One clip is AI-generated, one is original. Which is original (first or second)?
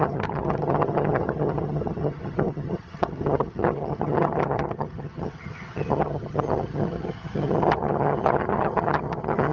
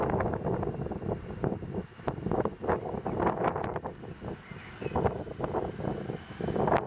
second